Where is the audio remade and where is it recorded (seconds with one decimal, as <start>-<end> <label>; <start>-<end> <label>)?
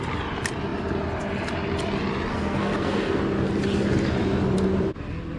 0.0-2.3 recorded; 2.3-3.2 remade; 3.2-5.4 recorded